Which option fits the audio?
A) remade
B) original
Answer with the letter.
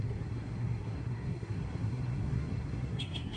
A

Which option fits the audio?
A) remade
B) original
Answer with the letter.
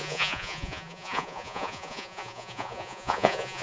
A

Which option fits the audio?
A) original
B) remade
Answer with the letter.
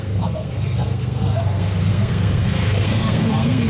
B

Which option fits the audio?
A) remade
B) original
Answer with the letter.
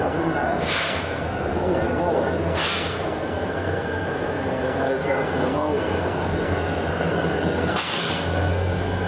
A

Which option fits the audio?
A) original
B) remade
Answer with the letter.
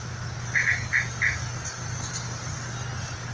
A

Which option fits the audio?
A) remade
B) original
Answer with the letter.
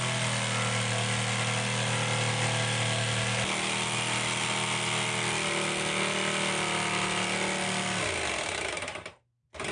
B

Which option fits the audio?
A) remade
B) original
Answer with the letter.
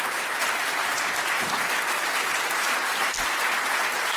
B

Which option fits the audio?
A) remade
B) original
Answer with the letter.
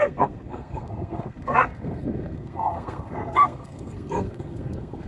A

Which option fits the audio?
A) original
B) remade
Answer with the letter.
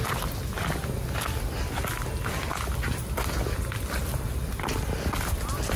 A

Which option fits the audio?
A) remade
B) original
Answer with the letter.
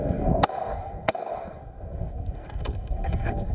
A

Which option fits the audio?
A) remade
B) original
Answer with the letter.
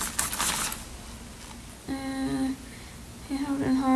B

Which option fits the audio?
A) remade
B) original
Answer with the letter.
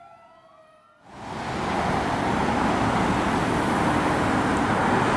B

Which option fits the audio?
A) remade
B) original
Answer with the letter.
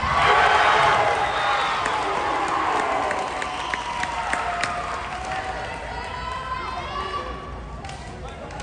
B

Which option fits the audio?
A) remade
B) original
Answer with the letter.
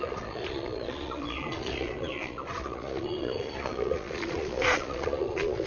A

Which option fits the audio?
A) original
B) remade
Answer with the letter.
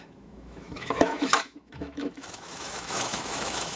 B